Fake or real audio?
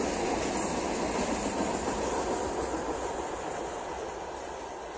real